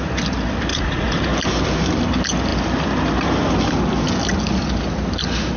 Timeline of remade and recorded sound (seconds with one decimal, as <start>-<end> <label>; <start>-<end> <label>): 0.0-0.7 recorded; 0.7-1.2 remade; 1.2-5.6 recorded